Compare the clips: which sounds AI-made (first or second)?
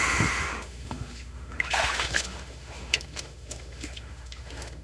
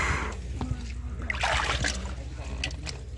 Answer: first